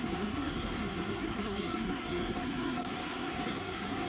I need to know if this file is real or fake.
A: fake